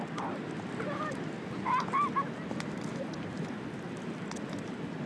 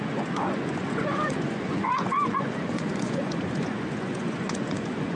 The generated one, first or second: second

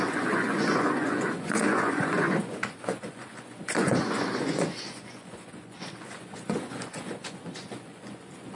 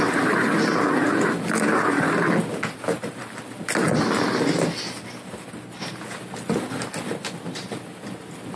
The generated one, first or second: first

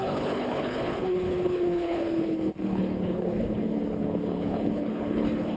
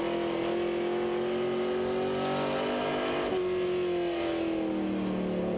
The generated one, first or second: first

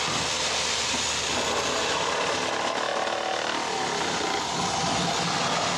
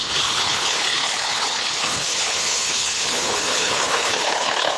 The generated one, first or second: second